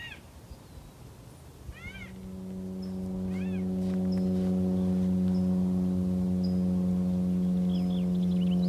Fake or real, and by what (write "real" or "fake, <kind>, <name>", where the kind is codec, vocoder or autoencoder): real